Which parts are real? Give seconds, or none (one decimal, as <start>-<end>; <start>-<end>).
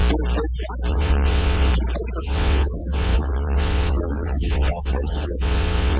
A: 0.0-0.9; 1.7-2.2